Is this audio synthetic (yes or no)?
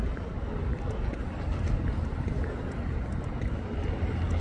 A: no